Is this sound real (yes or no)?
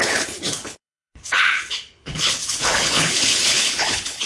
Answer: no